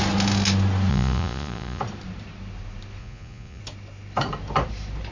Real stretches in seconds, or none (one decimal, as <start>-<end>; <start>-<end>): 0.0-0.9; 1.8-3.0; 3.6-5.1

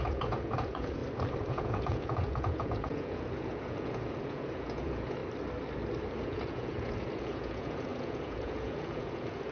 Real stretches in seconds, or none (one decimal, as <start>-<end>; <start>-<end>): 1.0-1.5; 5.2-6.2

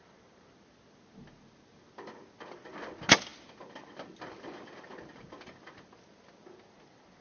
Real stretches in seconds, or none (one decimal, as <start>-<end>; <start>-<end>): 0.0-7.2